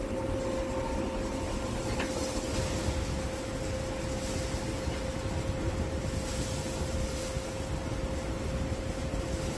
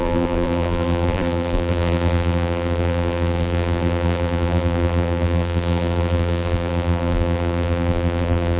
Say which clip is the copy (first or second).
second